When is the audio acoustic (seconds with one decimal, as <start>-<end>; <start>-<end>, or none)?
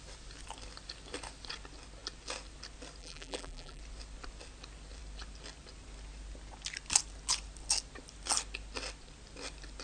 0.0-3.0; 3.8-9.8